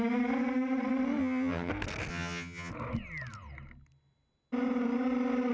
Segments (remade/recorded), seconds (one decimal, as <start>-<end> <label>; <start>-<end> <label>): 0.0-1.2 recorded; 1.2-1.7 remade; 1.7-2.1 recorded; 2.1-2.7 remade; 2.7-5.5 recorded